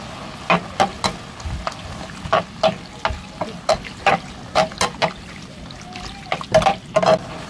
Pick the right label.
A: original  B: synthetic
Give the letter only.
A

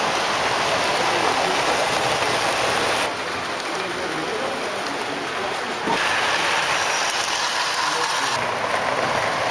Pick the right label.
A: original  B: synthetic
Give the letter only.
A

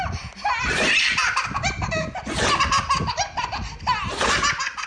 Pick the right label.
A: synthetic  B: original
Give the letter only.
B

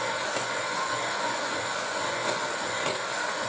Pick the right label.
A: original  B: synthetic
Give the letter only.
B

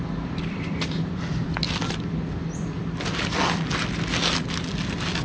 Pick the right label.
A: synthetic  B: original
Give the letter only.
B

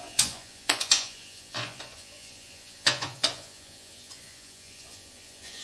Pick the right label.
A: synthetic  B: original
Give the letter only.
A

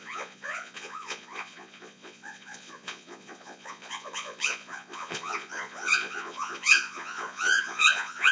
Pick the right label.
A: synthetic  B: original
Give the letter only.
A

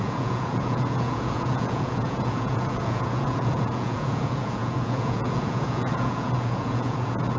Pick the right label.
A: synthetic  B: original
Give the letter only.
A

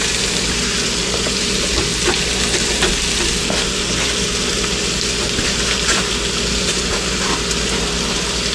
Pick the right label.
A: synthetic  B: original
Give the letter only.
B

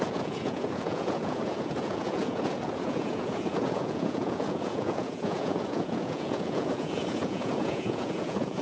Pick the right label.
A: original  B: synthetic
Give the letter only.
B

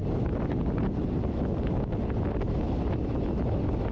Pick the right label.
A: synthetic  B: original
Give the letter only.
B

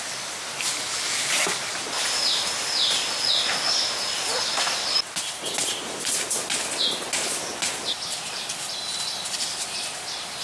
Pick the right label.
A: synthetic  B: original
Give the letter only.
B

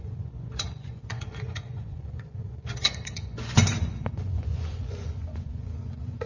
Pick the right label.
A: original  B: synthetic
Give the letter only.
B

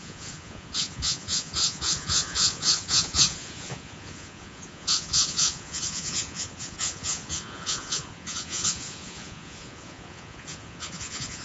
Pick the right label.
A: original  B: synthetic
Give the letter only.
B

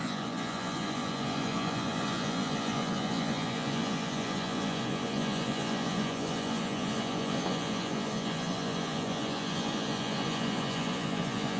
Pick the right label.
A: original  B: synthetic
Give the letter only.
B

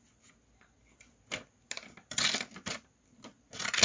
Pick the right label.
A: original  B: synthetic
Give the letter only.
A